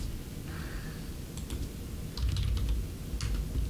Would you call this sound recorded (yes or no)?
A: yes